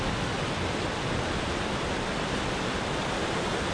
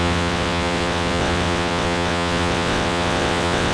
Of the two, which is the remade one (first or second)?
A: second